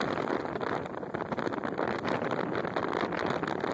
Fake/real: real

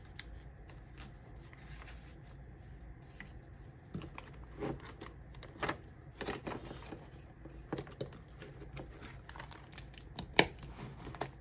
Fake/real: real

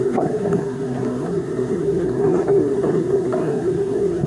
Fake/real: fake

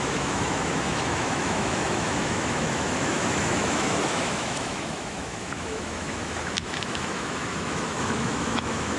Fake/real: fake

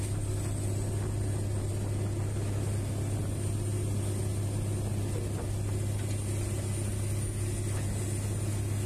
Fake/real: real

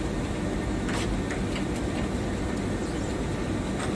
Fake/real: real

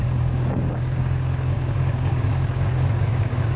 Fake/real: fake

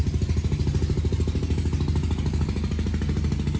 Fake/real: real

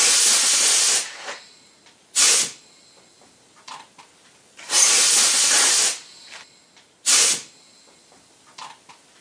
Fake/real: real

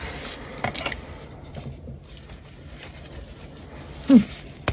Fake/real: real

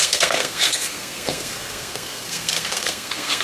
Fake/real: fake